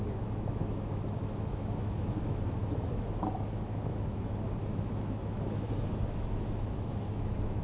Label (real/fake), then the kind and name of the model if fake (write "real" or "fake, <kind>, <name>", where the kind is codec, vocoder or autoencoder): fake, autoencoder, DAC-VAE